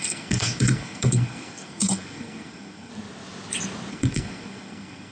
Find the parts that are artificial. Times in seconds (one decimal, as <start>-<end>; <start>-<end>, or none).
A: 0.0-2.9; 3.9-5.1